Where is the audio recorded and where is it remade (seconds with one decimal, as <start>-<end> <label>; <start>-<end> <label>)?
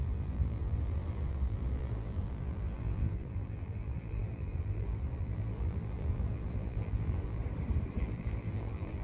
0.0-7.4 remade; 7.4-8.0 recorded; 8.0-9.0 remade